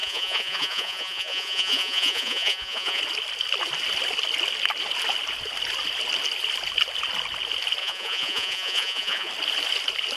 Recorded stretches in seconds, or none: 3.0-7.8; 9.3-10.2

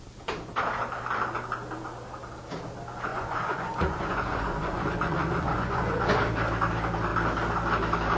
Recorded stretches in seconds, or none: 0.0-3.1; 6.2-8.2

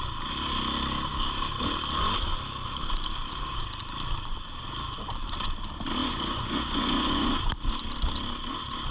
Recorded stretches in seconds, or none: 0.0-6.0; 7.3-8.9